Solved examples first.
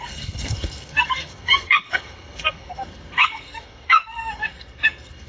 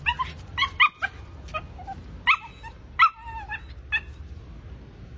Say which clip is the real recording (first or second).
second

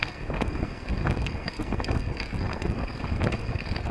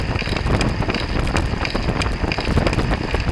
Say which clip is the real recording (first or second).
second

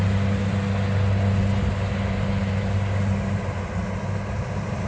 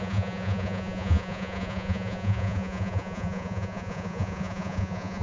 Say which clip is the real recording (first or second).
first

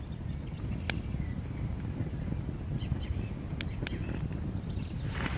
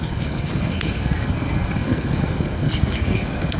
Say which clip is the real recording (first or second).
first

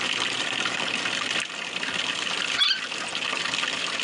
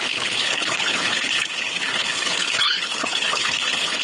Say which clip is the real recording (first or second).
first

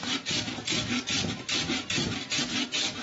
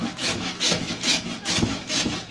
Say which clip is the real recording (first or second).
first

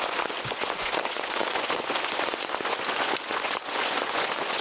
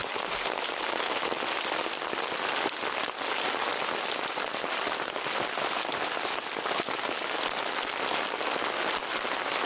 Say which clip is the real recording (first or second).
second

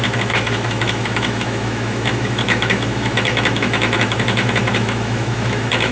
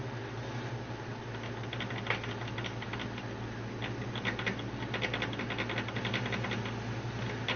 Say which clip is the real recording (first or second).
second